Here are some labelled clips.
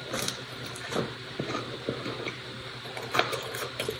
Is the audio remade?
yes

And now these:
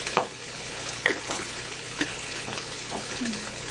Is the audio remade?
yes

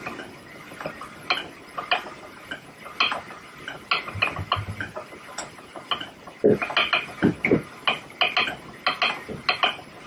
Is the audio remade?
no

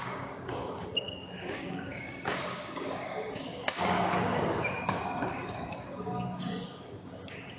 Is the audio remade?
yes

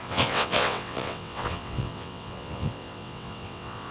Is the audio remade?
yes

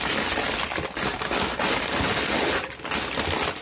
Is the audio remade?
no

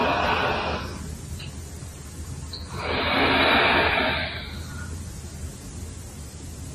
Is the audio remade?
no